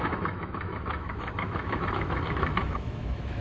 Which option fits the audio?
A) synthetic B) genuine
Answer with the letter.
A